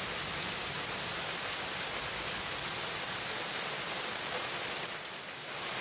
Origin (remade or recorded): recorded